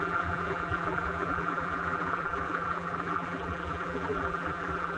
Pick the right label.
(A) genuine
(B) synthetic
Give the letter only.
B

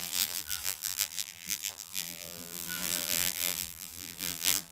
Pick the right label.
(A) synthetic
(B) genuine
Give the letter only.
A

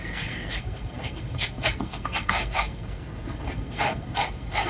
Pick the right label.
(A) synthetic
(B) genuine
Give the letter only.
A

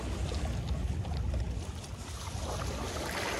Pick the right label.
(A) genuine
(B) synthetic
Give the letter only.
A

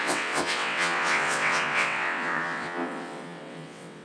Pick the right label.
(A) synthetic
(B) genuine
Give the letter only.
A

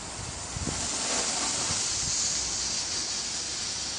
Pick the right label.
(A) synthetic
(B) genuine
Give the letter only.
B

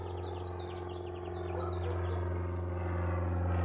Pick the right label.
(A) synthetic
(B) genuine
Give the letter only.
B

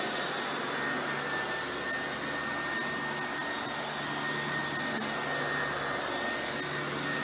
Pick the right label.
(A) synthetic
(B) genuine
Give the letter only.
B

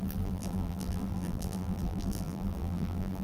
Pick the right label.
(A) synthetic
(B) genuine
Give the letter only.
A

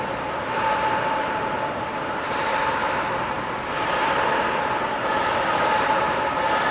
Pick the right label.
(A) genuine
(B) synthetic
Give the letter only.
A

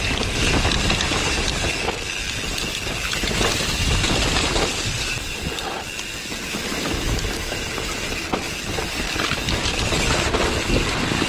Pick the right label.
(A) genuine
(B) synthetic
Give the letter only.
A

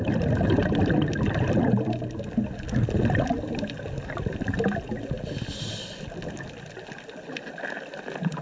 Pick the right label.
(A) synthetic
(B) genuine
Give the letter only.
B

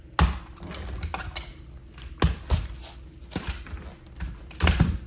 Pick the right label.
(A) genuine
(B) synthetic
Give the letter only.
A